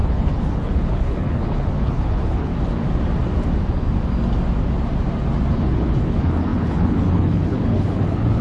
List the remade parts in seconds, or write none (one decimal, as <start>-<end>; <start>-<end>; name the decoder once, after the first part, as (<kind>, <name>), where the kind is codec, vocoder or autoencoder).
0.0-2.5 (codec, HILCodec); 5.5-8.4